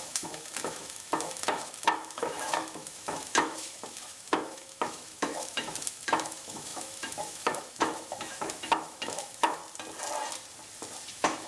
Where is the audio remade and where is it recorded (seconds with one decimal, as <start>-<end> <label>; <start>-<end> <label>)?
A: 0.0-9.6 remade; 9.6-11.1 recorded; 11.1-11.5 remade